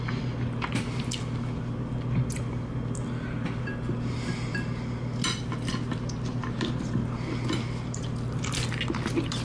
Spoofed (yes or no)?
no